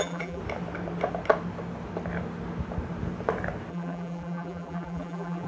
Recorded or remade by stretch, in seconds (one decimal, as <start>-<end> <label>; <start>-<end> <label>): 0.0-0.4 remade; 0.4-3.7 recorded; 3.7-5.5 remade